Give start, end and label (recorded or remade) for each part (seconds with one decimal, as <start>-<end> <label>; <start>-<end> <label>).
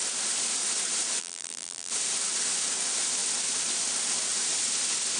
0.0-1.2 recorded; 1.2-1.9 remade; 1.9-5.2 recorded